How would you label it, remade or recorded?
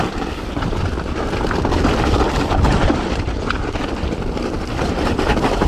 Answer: remade